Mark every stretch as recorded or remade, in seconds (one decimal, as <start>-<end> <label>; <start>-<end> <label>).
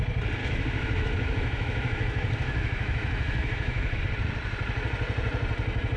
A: 0.0-0.4 recorded; 0.4-4.0 remade; 4.0-6.0 recorded